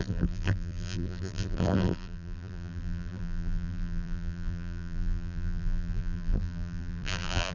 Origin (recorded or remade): remade